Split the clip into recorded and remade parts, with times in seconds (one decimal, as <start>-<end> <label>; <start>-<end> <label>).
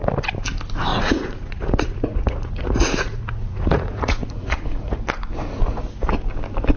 0.0-0.9 recorded; 0.9-5.0 remade; 5.0-6.8 recorded